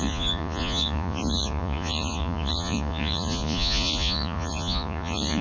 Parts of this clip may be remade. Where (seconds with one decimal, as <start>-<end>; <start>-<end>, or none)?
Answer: 0.0-5.4